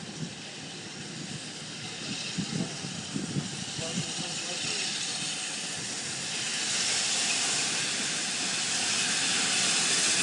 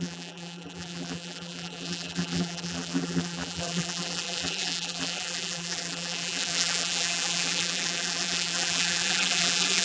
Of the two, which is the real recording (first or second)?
first